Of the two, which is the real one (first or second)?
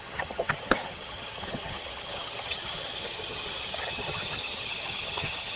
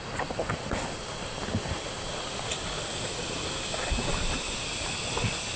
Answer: second